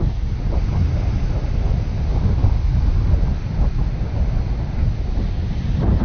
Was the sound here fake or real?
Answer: real